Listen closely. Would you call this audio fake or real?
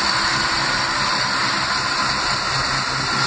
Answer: real